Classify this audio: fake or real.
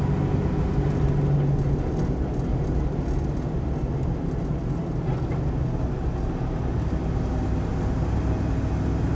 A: real